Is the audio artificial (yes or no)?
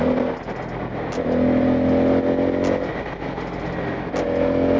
no